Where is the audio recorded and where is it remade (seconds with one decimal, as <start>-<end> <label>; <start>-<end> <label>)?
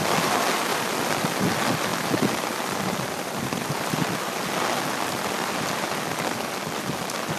0.0-0.7 recorded; 0.7-1.4 remade; 1.4-1.9 recorded; 1.9-4.2 remade; 4.2-7.4 recorded